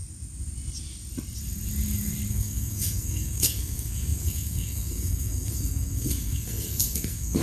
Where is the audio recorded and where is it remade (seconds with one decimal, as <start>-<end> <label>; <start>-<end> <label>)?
0.0-2.3 recorded; 2.3-7.4 remade